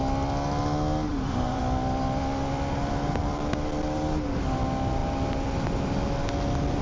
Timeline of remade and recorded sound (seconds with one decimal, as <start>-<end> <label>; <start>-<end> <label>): 0.0-1.1 recorded; 1.1-1.6 remade; 1.6-6.8 recorded